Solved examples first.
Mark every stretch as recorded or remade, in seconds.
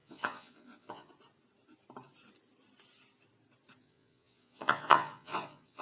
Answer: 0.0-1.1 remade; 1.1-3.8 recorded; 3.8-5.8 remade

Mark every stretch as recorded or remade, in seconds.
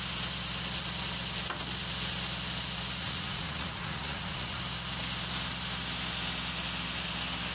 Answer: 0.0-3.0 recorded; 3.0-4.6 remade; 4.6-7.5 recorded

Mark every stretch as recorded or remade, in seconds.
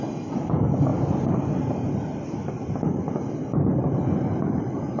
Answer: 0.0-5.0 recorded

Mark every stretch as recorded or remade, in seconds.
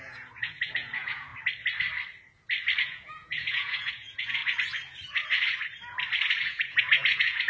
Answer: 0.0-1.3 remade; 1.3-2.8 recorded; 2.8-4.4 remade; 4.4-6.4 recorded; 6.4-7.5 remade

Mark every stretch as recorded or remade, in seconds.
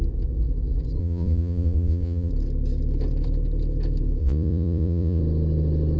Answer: 0.0-1.0 recorded; 1.0-2.3 remade; 2.3-4.2 recorded; 4.2-5.2 remade; 5.2-6.0 recorded